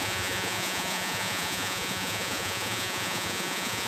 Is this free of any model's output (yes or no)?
no